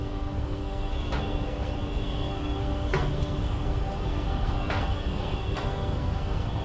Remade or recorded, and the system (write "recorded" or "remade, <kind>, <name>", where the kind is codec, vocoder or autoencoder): remade, codec, SNAC